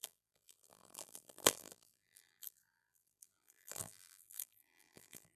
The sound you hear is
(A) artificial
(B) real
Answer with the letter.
A